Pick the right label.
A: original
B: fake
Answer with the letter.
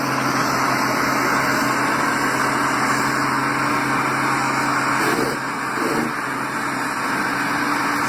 A